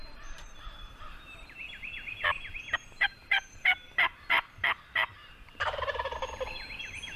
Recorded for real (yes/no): no